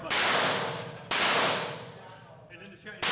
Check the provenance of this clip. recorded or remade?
recorded